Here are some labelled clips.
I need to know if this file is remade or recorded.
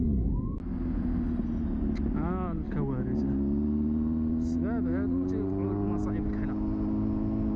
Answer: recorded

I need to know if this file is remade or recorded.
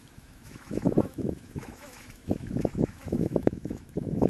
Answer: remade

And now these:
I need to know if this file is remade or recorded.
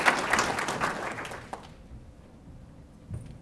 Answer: recorded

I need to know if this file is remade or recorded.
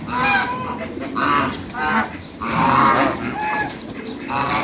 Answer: recorded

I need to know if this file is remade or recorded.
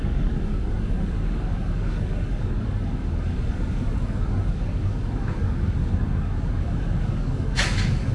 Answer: remade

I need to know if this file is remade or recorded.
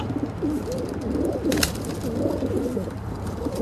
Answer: remade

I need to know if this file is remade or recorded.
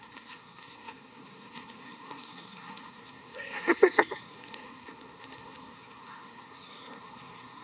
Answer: remade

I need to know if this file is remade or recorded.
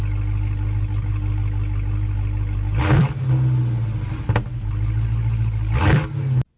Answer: recorded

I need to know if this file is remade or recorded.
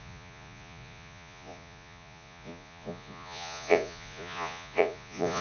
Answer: remade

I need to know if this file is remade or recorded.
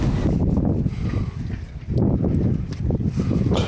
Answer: recorded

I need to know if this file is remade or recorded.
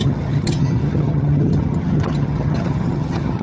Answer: remade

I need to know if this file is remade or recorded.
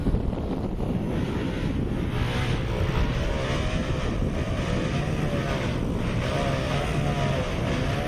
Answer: recorded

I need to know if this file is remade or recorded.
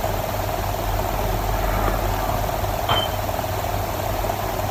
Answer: recorded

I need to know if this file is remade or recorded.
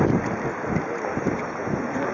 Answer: recorded